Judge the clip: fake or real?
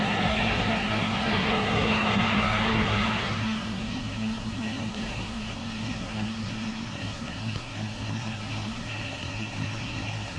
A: fake